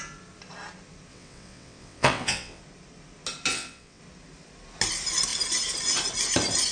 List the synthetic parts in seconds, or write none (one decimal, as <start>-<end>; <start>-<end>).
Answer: 1.1-2.6; 3.5-4.0